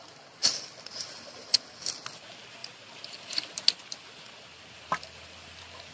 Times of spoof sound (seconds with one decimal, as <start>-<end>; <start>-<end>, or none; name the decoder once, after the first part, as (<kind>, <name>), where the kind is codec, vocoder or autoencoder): none